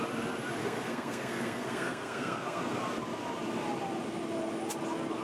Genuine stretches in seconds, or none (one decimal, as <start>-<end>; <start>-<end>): 0.0-0.6; 2.8-5.2